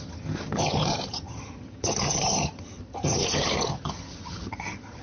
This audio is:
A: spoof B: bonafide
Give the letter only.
A